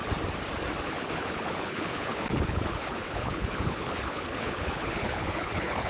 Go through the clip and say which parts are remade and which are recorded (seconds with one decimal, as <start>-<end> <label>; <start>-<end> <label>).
0.0-0.8 recorded; 0.8-5.9 remade